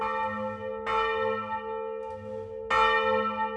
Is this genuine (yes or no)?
yes